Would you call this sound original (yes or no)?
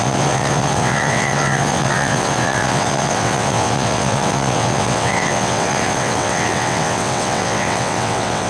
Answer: no